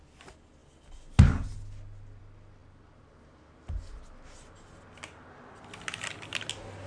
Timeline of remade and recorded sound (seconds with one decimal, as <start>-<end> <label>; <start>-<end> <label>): 0.0-6.9 recorded